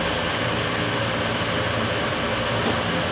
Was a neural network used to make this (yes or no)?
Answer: no